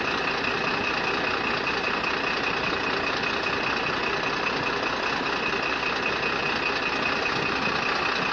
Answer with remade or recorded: recorded